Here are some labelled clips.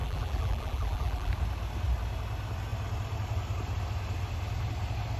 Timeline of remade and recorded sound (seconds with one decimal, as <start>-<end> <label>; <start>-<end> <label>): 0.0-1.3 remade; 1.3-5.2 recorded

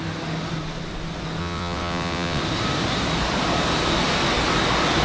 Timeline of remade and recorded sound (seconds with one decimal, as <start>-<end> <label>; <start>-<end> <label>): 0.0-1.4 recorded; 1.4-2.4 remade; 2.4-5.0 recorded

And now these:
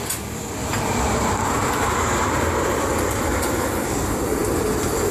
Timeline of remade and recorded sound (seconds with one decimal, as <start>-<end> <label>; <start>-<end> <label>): 0.0-4.4 remade; 4.4-5.1 recorded